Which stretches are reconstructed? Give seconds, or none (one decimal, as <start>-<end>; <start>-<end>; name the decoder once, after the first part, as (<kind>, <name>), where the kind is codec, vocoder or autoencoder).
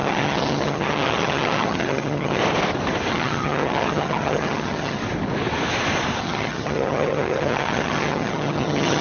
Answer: 0.0-2.4 (vocoder, HiFi-GAN); 3.1-5.0; 6.2-9.0